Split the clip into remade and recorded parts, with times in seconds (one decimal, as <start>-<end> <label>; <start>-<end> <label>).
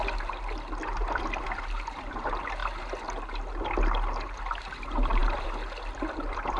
0.0-2.6 remade; 2.6-4.6 recorded; 4.6-6.6 remade